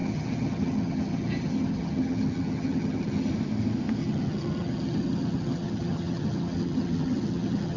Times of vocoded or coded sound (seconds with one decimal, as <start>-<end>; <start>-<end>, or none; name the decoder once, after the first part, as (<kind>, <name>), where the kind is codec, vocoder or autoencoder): 0.0-3.3 (vocoder, HiFi-GAN); 4.0-7.8